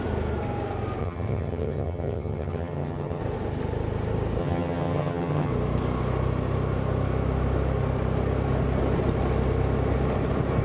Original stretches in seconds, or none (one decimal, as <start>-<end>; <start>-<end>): 0.0-1.0; 3.2-4.4; 5.5-10.6